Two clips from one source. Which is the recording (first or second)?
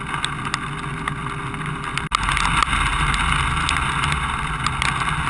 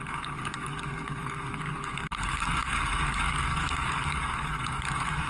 first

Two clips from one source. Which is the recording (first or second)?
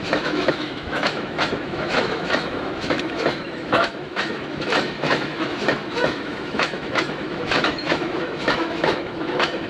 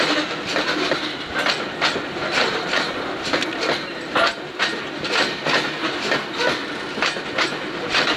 second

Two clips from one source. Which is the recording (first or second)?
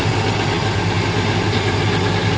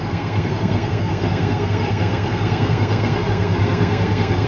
first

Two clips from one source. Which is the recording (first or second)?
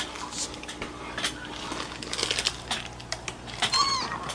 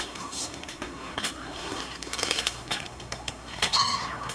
first